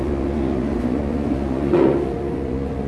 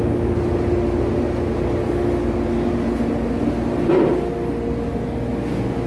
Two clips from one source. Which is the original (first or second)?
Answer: second